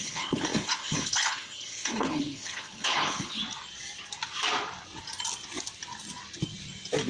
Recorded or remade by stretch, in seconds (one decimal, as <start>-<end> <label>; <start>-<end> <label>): 0.0-3.4 remade; 3.4-7.1 recorded